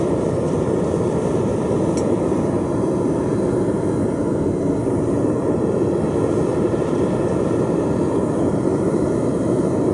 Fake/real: real